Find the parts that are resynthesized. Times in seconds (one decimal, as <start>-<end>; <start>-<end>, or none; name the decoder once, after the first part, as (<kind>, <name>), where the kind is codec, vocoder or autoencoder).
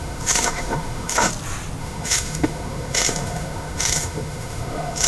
0.0-1.3 (autoencoder, DAC-VAE); 1.8-5.1